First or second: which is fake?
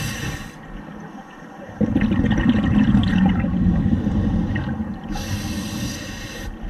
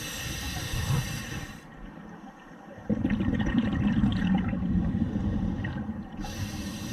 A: second